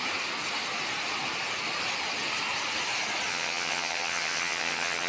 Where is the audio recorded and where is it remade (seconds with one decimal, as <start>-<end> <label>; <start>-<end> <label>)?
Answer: 0.0-3.3 recorded; 3.3-5.1 remade

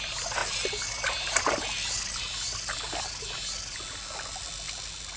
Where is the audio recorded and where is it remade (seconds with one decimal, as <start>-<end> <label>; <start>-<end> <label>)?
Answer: 0.0-5.2 recorded

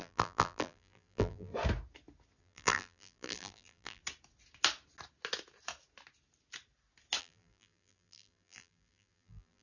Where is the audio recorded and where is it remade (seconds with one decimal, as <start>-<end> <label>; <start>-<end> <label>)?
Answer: 0.0-1.5 remade; 1.5-2.4 recorded; 2.4-4.0 remade; 4.0-7.2 recorded; 7.2-9.6 remade

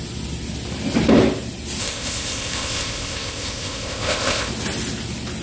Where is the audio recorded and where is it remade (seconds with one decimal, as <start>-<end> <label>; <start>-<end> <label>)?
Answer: 0.0-1.8 recorded; 1.8-4.5 remade; 4.5-5.4 recorded

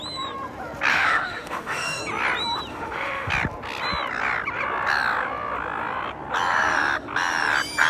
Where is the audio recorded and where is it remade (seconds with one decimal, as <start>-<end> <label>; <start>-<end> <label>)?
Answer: 0.0-0.9 recorded; 0.9-2.0 remade; 2.0-2.7 recorded; 2.7-3.3 remade; 3.3-7.9 recorded